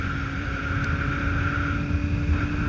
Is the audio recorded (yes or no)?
yes